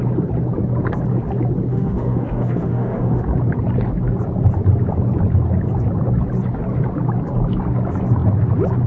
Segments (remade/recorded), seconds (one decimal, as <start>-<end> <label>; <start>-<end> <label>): 0.0-1.7 recorded; 1.7-3.2 remade; 3.2-8.9 recorded